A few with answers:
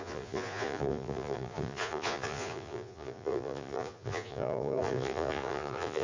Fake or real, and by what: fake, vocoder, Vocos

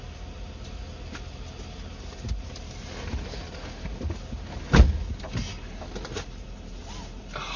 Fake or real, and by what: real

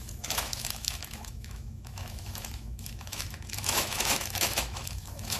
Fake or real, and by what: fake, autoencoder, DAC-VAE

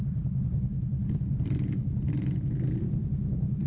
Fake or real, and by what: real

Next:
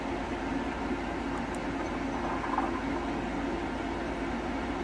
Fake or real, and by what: real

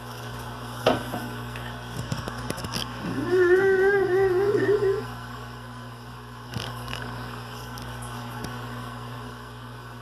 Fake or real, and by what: fake, codec, SNAC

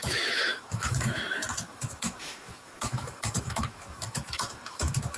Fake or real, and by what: fake, autoencoder, DAC-VAE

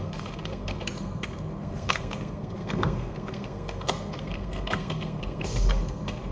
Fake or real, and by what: fake, codec, SNAC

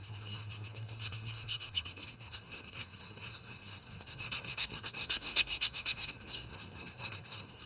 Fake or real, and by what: fake, codec, SNAC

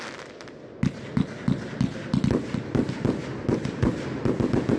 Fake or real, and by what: real